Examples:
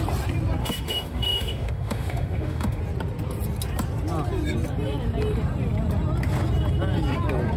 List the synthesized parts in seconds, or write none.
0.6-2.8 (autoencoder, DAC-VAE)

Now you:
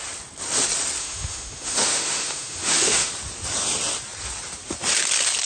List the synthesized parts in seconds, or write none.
1.0-3.1 (autoencoder, DAC-VAE)

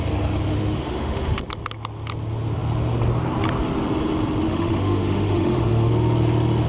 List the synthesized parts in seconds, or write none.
0.5-1.4 (autoencoder, DAC-VAE); 4.5-5.9

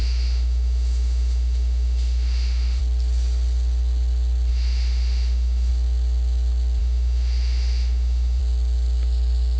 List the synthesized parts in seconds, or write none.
0.0-2.8 (autoencoder, DAC-VAE); 4.5-5.7; 6.8-8.4

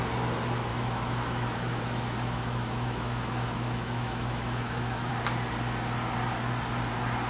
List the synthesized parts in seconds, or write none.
0.7-5.1 (autoencoder, DAC-VAE)

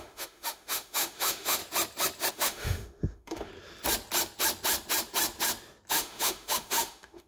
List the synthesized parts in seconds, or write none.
0.0-1.6 (autoencoder, DAC-VAE); 2.3-3.5; 5.9-7.3

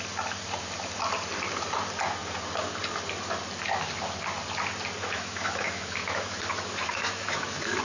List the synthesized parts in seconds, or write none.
5.0-7.8 (autoencoder, DAC-VAE)